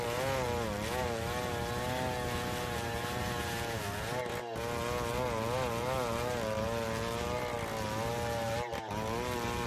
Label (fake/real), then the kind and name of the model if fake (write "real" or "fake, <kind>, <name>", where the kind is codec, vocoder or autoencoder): real